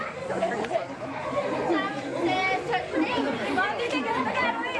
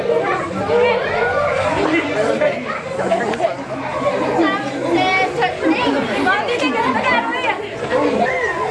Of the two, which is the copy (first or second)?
first